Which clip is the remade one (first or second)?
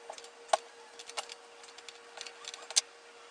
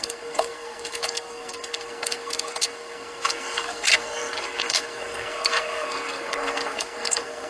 second